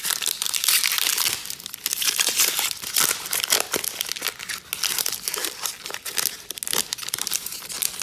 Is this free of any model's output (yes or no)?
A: yes